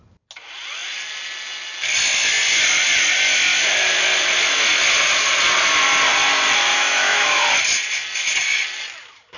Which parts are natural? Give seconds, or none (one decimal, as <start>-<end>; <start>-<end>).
0.0-6.7; 7.5-9.4